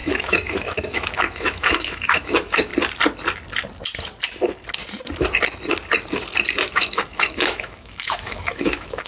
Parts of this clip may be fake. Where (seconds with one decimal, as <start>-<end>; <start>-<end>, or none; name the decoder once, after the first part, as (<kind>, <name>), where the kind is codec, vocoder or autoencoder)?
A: 0.0-2.7 (autoencoder, DAC-VAE); 6.7-9.1